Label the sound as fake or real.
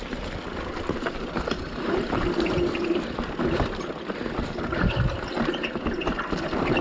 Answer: real